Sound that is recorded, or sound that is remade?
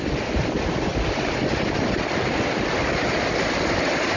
recorded